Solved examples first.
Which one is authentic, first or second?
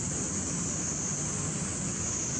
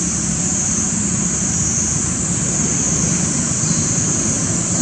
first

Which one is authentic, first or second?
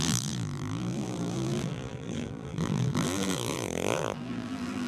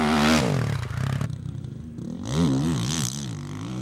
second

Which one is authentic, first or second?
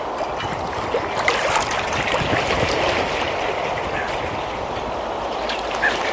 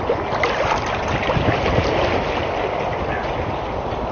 second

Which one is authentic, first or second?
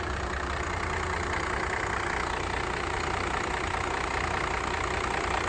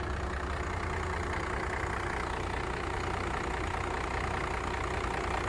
second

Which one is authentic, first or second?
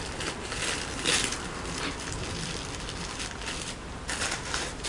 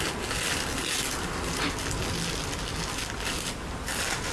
second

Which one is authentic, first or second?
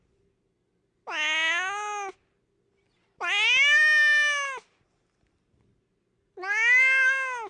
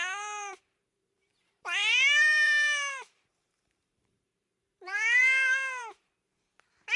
first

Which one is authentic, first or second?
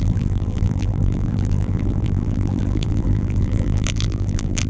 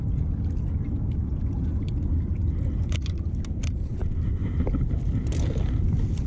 second